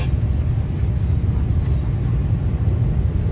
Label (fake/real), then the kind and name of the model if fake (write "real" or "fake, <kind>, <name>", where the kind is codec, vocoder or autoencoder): real